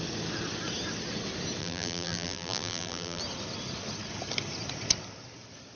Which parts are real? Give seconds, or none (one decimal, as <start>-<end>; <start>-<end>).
0.0-1.6; 3.2-5.8